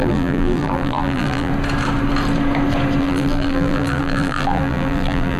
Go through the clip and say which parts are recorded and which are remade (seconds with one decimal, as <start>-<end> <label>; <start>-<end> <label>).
0.0-1.5 remade; 1.5-3.0 recorded; 3.0-5.4 remade